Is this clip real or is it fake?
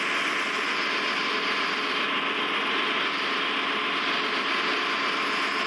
real